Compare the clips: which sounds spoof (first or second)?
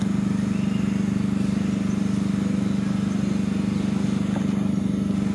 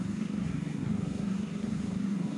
second